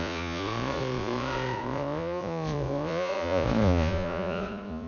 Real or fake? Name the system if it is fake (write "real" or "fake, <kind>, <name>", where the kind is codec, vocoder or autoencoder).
fake, vocoder, Vocos